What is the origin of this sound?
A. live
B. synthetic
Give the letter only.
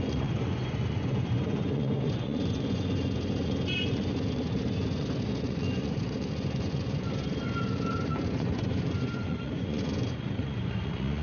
B